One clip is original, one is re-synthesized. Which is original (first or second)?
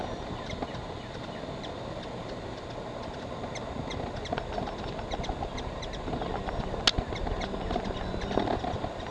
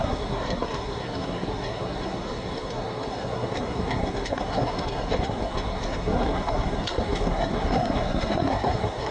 first